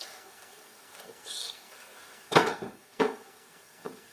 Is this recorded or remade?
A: remade